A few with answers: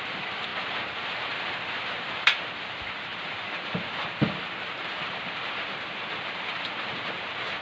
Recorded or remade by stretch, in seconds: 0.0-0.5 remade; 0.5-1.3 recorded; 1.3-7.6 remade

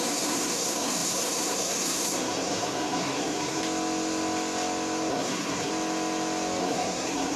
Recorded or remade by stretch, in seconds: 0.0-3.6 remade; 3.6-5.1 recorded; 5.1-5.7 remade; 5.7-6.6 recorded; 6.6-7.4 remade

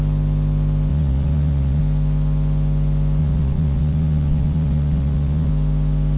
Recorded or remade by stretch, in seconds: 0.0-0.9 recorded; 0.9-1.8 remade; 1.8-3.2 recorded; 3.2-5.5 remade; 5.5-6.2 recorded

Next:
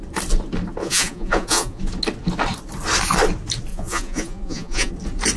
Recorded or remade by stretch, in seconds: 0.0-0.8 recorded; 0.8-1.8 remade; 1.8-3.7 recorded; 3.7-4.9 remade; 4.9-5.4 recorded